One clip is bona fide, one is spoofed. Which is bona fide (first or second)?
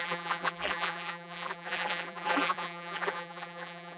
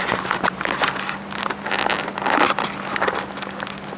second